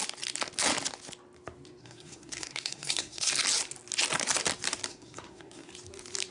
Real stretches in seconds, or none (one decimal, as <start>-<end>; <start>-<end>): 0.0-1.8; 3.3-4.9; 5.7-6.3